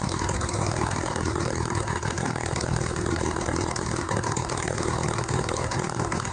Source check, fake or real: fake